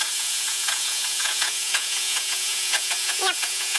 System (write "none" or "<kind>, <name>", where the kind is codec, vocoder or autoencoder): vocoder, Vocos